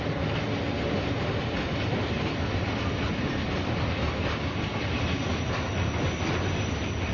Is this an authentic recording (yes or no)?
yes